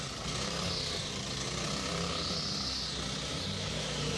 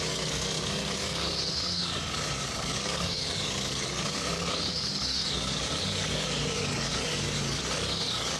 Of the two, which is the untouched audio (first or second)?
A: first